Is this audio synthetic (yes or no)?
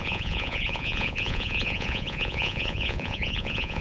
yes